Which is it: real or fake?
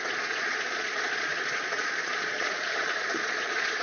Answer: fake